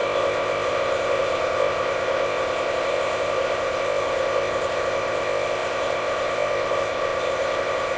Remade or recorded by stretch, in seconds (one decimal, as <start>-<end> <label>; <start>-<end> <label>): 0.0-8.0 remade